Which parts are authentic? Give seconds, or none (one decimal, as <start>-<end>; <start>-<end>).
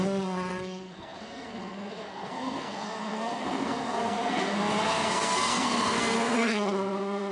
none